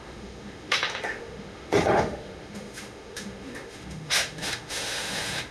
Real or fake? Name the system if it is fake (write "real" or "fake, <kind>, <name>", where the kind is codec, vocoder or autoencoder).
fake, autoencoder, DAC-VAE